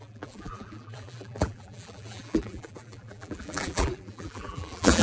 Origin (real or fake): fake